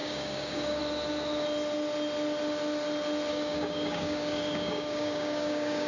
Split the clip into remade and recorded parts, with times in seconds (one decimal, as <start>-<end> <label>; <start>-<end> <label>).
0.0-0.8 remade; 0.8-3.3 recorded; 3.3-5.9 remade